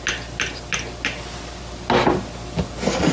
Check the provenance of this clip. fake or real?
real